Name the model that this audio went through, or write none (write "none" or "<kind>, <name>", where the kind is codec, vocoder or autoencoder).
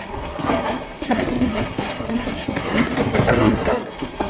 codec, SNAC